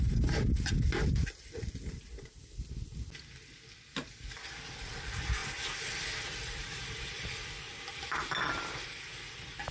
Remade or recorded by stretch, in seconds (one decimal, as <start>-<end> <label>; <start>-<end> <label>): 0.0-5.4 recorded; 5.4-7.7 remade; 7.7-9.7 recorded

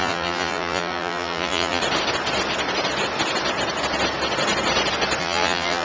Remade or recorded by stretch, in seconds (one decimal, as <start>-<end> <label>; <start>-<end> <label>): 0.0-1.8 remade; 1.8-5.2 recorded; 5.2-5.8 remade

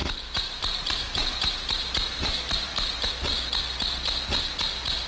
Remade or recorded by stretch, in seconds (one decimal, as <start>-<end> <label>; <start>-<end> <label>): 0.0-3.1 remade; 3.1-5.1 recorded